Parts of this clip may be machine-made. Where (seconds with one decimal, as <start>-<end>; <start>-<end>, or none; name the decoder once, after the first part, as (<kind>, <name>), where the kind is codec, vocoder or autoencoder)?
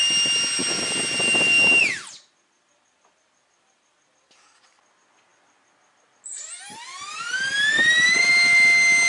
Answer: none